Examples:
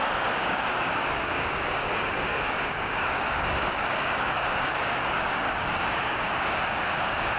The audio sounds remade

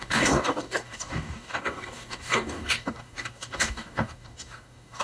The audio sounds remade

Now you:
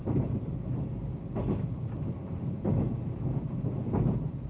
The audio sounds recorded